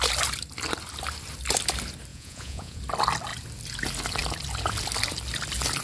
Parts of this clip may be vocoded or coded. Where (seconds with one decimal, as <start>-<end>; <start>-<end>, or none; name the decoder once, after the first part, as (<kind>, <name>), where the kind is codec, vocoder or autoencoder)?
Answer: 2.1-2.8 (vocoder, Vocos)

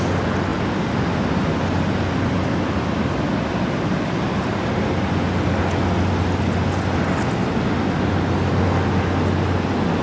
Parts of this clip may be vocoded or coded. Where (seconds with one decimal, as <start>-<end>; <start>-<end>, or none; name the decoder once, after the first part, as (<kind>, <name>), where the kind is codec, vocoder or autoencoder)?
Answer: none

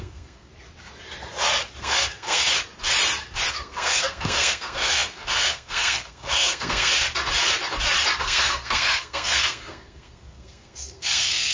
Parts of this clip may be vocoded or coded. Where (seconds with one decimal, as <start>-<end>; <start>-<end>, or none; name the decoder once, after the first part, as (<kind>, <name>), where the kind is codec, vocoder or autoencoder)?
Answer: 0.0-0.5 (codec, SNAC); 1.8-2.5; 3.5-6.9; 8.2-11.5

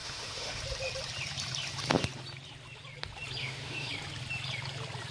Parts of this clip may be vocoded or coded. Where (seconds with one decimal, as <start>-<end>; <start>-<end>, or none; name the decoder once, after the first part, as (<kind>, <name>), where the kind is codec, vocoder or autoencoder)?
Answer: 0.0-0.6 (autoencoder, DAC-VAE); 3.4-3.9

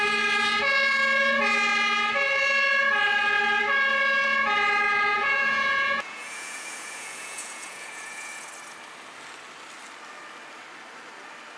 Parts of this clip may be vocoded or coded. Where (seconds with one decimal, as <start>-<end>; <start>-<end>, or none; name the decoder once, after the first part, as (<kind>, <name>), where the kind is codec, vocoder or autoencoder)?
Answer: 5.1-8.5 (vocoder, Vocos)

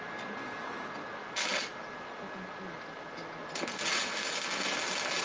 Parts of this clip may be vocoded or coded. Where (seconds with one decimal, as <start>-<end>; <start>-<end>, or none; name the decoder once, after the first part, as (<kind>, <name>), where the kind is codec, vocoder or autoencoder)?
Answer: none

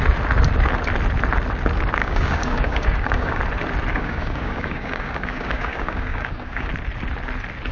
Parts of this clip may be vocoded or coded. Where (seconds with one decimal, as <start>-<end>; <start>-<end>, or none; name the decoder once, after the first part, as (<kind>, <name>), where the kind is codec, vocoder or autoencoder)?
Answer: 2.0-3.4 (codec, DAC); 3.9-6.7

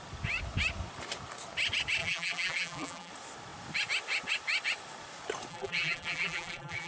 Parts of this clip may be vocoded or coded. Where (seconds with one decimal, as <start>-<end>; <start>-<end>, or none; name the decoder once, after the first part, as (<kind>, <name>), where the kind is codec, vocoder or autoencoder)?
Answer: 2.0-3.1 (vocoder, BigVGAN v2); 5.5-6.9